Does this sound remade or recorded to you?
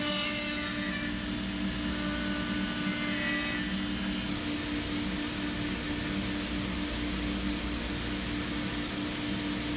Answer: recorded